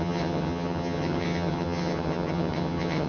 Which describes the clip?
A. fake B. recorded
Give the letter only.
A